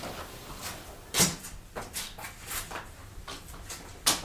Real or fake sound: real